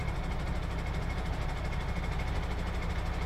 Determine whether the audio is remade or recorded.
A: recorded